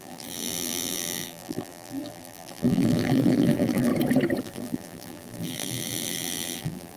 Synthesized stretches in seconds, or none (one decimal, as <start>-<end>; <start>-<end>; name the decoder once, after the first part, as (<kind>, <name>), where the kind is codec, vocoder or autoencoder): 0.0-3.9 (vocoder, BigVGAN v2); 4.4-7.0